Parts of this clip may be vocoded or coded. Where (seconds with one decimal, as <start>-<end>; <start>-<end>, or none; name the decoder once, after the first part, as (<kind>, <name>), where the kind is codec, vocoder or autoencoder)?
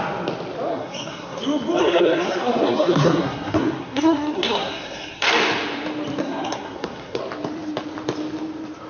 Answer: 0.7-1.4 (codec, SNAC); 1.8-5.3; 6.2-7.2